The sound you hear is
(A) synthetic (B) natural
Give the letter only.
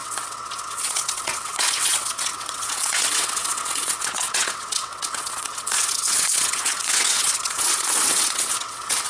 A